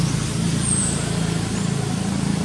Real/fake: real